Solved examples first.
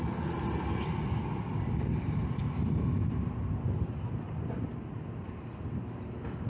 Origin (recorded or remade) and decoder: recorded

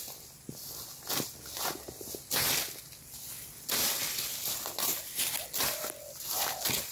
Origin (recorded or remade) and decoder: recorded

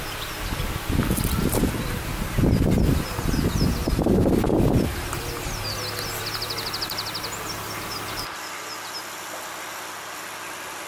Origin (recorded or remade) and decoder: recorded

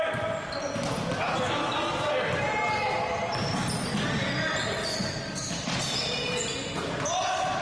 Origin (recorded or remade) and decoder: recorded